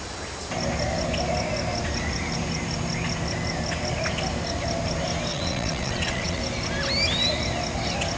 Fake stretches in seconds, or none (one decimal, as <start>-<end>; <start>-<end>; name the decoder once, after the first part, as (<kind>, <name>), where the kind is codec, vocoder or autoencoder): 5.3-6.4 (vocoder, WaveNeXt)